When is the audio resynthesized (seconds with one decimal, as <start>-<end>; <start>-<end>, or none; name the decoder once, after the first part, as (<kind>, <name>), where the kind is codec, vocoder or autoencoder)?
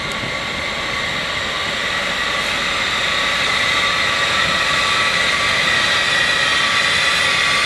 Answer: none